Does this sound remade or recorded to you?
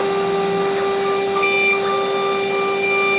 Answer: recorded